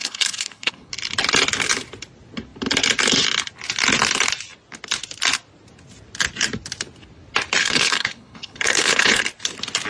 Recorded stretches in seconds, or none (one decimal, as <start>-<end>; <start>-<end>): 0.9-7.6; 9.2-9.9